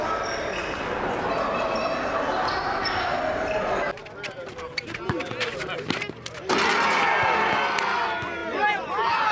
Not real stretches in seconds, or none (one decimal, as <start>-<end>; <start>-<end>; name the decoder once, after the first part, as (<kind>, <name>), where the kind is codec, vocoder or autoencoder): 8.4-9.3 (vocoder, BigVGAN v2)